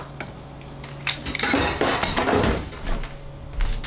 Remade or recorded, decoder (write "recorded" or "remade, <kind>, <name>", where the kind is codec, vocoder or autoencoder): recorded